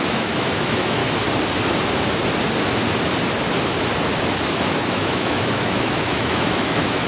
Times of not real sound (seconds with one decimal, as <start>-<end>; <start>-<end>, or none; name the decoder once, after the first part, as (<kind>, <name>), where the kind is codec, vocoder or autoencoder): 0.0-1.0 (autoencoder, DAC-VAE); 4.7-7.1